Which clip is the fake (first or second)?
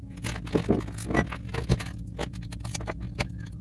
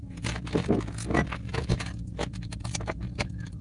second